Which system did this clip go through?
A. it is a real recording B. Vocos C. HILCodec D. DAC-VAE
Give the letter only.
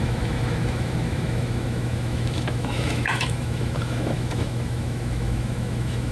D